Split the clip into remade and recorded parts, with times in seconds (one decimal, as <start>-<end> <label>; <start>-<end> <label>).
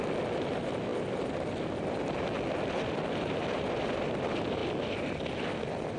0.0-4.6 remade; 4.6-6.0 recorded